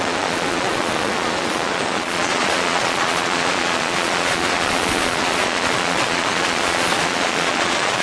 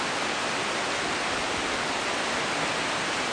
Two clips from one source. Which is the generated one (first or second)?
first